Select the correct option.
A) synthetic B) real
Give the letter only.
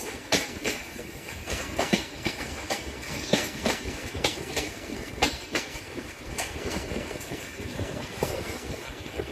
A